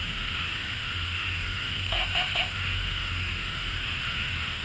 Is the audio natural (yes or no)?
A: no